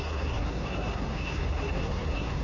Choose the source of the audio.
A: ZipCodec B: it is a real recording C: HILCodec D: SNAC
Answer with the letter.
D